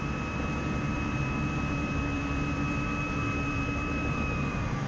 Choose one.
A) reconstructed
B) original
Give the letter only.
A